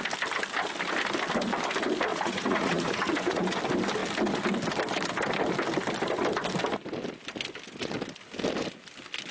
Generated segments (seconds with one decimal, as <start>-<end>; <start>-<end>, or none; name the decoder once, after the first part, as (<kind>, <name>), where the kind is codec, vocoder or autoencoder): 2.1-3.6 (vocoder, Vocos)